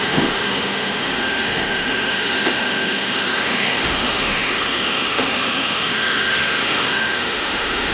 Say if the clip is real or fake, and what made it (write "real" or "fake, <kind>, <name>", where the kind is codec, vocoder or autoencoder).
fake, autoencoder, DAC-VAE